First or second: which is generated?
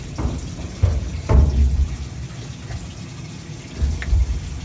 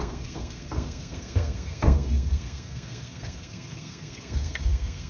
second